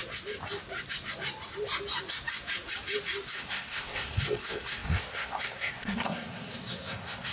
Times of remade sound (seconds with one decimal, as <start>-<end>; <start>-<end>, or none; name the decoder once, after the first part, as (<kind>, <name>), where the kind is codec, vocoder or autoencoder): 3.3-7.3 (codec, SNAC)